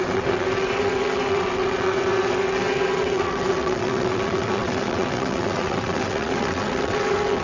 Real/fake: fake